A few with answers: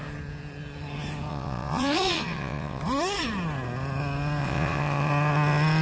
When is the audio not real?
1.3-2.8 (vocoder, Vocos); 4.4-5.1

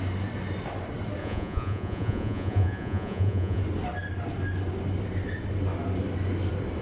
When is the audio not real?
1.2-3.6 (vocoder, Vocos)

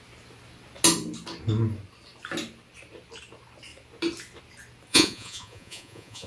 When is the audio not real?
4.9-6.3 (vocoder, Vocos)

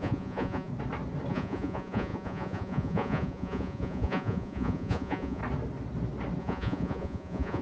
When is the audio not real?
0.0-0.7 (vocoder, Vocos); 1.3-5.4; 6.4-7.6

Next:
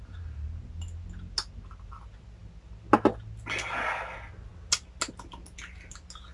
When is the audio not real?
none

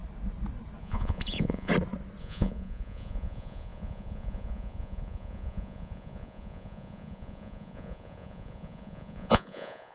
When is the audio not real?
0.8-1.7 (vocoder, Vocos); 2.2-9.9

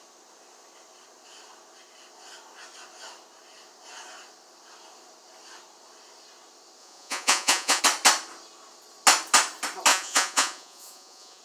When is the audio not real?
6.8-7.8 (vocoder, Vocos); 9.9-11.4

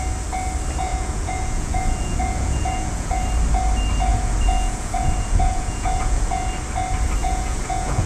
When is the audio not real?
0.9-3.2 (vocoder, Vocos); 4.1-6.4; 7.2-8.1